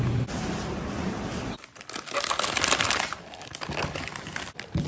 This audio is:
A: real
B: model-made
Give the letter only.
A